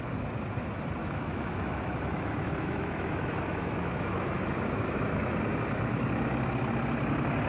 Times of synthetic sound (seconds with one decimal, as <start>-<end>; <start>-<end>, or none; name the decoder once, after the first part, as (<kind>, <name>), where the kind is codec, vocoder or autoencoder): 1.0-5.4 (autoencoder, DAC-VAE)